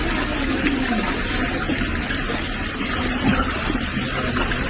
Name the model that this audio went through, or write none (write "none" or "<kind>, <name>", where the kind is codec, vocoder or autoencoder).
none